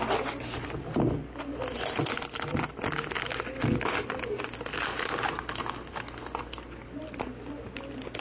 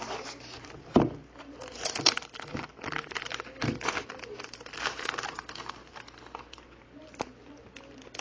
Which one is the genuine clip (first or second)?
first